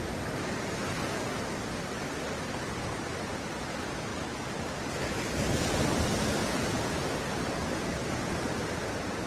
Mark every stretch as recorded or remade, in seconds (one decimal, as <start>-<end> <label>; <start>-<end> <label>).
0.0-6.4 recorded; 6.4-7.0 remade; 7.0-9.3 recorded